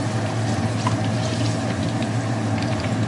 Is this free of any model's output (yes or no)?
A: no